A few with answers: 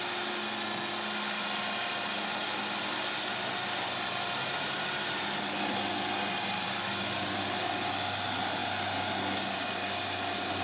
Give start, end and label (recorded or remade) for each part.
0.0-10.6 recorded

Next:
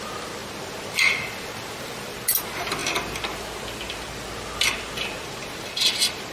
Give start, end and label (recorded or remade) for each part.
0.0-6.3 recorded

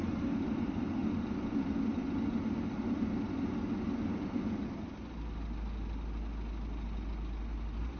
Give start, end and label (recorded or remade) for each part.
0.0-8.0 recorded

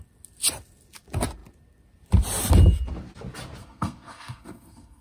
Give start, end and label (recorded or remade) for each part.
0.0-3.6 recorded; 3.6-5.0 remade

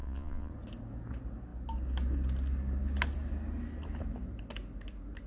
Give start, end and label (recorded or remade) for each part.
0.0-0.5 remade; 0.5-5.3 recorded

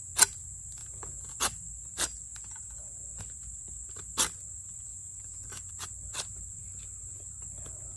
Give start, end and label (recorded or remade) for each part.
0.0-0.8 recorded; 0.8-1.4 remade; 1.4-2.3 recorded; 2.3-3.2 remade; 3.2-4.9 recorded; 4.9-5.7 remade; 5.7-8.0 recorded

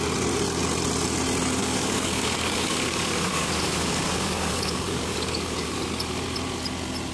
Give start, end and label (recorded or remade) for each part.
0.0-1.6 recorded; 1.6-5.8 remade; 5.8-7.1 recorded